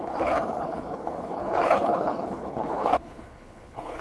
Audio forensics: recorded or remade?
remade